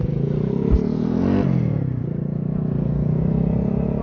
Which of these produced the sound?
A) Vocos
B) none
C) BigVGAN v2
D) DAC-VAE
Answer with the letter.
B